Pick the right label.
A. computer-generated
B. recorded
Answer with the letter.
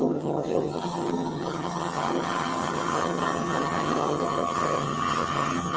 A